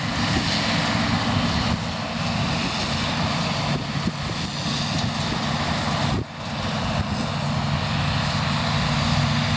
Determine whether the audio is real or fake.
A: real